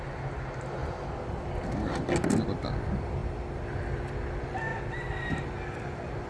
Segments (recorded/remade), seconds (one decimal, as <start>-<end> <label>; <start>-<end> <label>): 0.0-6.3 recorded